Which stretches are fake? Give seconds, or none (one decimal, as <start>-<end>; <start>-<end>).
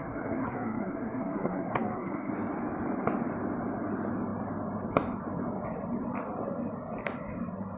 0.0-2.3